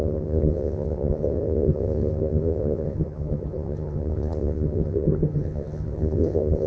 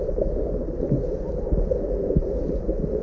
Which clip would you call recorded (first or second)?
second